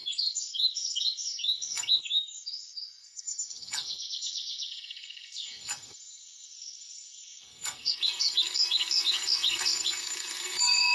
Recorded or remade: remade